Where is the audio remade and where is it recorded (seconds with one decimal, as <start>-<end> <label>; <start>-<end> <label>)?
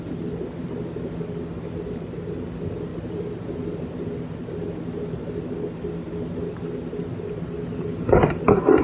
0.0-8.8 recorded